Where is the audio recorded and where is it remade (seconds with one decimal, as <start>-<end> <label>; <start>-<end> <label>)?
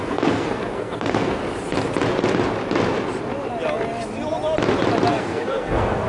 0.0-1.4 remade; 1.4-5.1 recorded; 5.1-6.1 remade